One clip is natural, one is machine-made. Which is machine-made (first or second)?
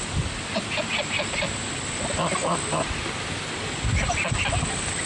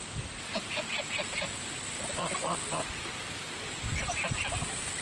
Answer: second